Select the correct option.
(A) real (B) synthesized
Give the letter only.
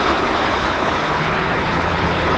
B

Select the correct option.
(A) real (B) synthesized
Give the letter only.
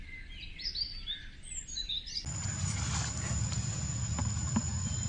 A